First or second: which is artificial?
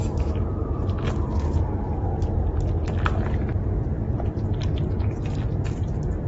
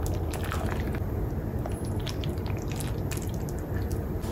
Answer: second